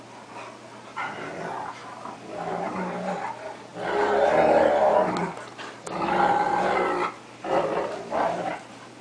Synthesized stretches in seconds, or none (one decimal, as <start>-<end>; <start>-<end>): none